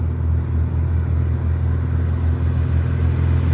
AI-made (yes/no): no